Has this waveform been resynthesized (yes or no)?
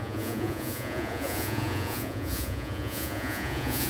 yes